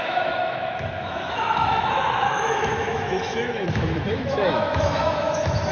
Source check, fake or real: fake